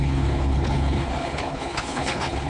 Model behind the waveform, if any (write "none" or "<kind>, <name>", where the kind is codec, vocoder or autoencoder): codec, HILCodec